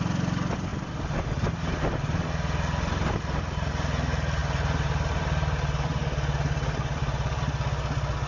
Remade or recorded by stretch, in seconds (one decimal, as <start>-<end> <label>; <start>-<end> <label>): 0.0-4.4 recorded; 4.4-7.4 remade; 7.4-8.3 recorded